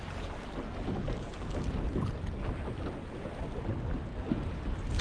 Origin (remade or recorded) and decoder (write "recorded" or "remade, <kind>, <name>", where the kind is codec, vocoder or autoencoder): recorded